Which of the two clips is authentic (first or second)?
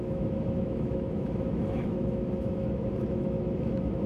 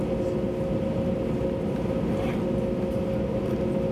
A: second